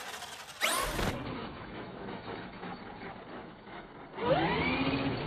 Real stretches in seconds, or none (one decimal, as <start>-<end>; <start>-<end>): 0.0-1.4; 2.8-3.4; 3.9-5.3